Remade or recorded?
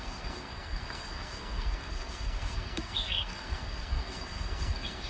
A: remade